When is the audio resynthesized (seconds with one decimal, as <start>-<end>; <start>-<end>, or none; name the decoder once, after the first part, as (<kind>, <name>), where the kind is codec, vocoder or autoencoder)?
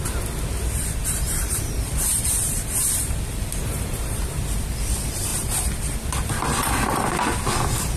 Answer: 1.0-4.4 (vocoder, BigVGAN v2)